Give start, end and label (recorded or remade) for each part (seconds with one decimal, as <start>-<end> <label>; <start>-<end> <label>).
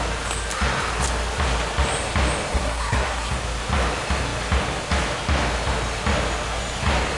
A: 0.0-2.5 recorded; 2.5-3.3 remade; 3.3-7.2 recorded